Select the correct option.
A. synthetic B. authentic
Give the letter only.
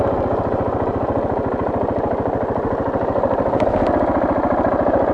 B